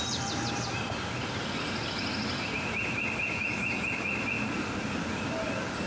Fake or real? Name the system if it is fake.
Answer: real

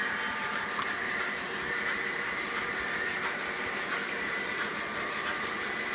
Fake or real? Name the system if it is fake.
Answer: fake, vocoder, BigVGAN v2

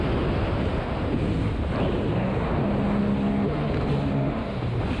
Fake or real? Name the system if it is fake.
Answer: real